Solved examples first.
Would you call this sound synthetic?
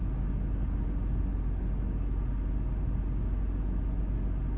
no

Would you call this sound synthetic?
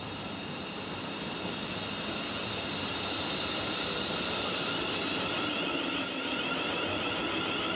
no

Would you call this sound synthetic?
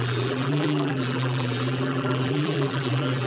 yes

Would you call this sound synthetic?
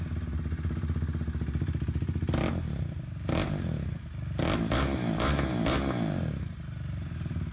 no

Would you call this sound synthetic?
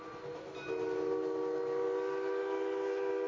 no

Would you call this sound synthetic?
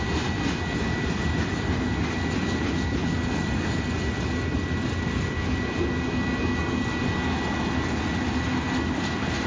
no